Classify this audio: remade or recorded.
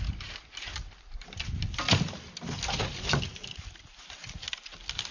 recorded